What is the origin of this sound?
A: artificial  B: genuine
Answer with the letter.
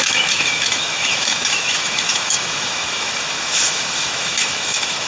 A